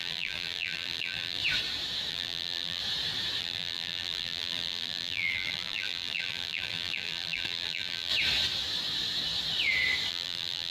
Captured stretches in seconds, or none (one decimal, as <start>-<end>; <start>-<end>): 1.4-2.1; 2.8-3.4; 8.1-10.1